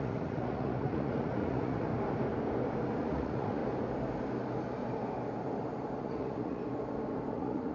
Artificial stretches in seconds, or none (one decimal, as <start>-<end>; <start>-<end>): 0.0-1.9; 3.0-3.6; 6.0-6.6; 7.3-7.7